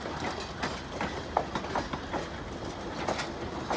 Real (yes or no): yes